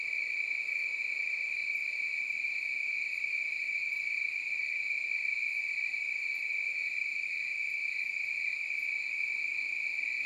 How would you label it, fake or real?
real